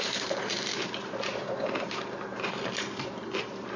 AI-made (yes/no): yes